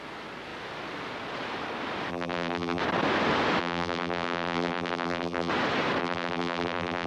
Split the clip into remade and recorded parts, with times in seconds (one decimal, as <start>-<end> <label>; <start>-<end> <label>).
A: 0.0-2.1 recorded; 2.1-2.8 remade; 2.8-3.6 recorded; 3.6-5.5 remade; 5.5-6.0 recorded; 6.0-7.1 remade